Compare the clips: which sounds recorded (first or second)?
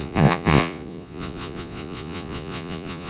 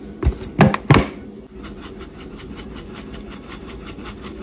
second